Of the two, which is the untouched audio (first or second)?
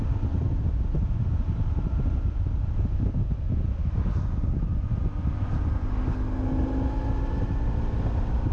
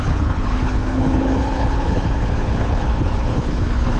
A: first